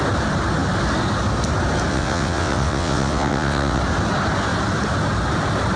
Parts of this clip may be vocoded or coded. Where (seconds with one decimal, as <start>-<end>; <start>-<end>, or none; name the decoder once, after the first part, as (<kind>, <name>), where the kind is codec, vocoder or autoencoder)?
1.9-3.8 (vocoder, WaveNeXt)